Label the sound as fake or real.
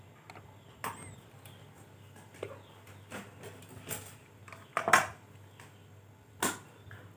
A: real